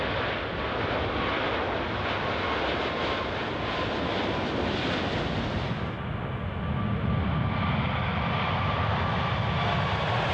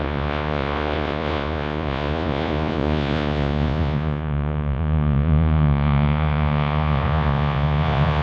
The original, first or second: first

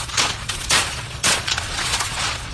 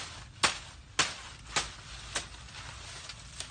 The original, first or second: second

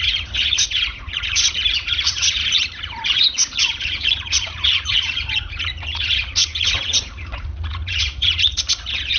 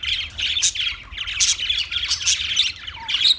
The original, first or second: second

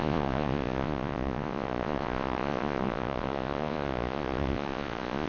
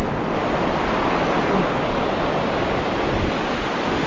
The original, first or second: second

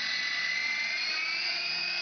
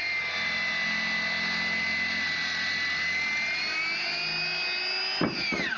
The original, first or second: second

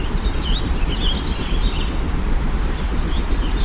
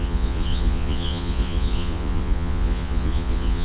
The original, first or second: first